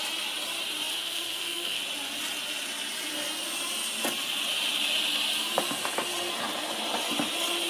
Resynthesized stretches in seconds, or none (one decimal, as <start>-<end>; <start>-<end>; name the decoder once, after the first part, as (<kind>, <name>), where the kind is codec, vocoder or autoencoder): 0.9-1.8 (codec, SNAC)

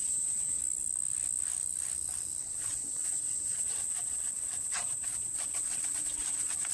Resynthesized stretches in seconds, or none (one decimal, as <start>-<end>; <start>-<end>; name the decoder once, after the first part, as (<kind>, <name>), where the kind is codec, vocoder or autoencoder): 0.0-0.6 (vocoder, WaveNeXt); 2.4-6.7

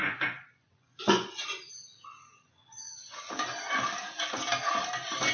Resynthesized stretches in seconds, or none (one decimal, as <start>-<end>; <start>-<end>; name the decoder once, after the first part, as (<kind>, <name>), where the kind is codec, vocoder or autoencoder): 0.0-1.4 (vocoder, Vocos); 1.9-3.3

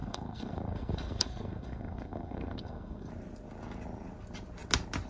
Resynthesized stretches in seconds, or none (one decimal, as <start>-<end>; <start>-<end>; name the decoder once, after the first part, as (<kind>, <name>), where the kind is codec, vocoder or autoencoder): 0.0-3.1 (codec, SNAC)